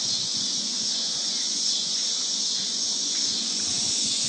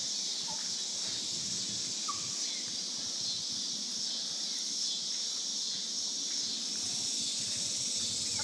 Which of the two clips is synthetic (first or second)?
first